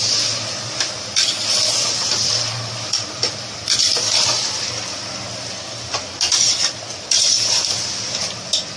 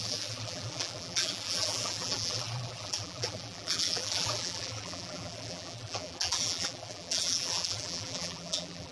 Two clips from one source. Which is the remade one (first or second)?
second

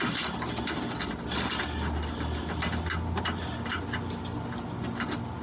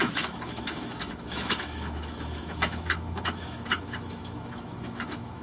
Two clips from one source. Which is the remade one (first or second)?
second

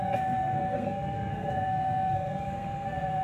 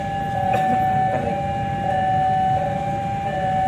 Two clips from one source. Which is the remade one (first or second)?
first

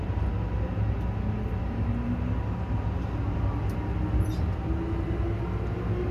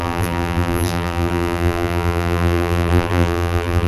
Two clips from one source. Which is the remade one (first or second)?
second